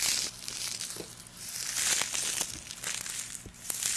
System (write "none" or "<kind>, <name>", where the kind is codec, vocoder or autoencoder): none